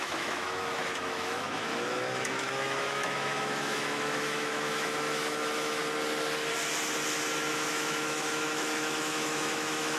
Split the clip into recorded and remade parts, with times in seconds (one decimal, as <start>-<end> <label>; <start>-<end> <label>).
0.0-5.8 remade; 5.8-7.5 recorded; 7.5-10.0 remade

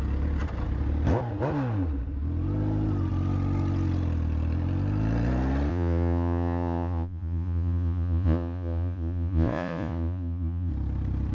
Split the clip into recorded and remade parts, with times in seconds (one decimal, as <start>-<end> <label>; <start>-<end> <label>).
0.0-5.7 recorded; 5.7-10.7 remade; 10.7-11.3 recorded

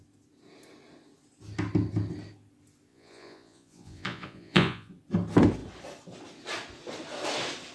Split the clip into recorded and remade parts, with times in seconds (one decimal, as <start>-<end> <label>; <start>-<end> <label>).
0.0-2.9 recorded; 2.9-4.9 remade; 4.9-7.7 recorded

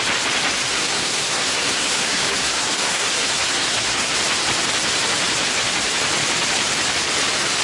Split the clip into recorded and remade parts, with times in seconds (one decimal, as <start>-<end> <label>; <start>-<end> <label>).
0.0-0.7 recorded; 0.7-4.1 remade; 4.1-7.6 recorded

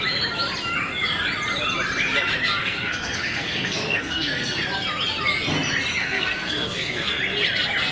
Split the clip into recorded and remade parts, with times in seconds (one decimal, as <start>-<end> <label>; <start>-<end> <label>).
0.0-2.6 recorded; 2.6-4.6 remade; 4.6-6.0 recorded; 6.0-7.2 remade; 7.2-7.9 recorded

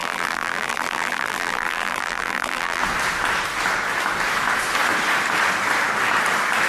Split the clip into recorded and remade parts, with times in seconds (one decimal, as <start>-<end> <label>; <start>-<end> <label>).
0.0-2.8 remade; 2.8-6.7 recorded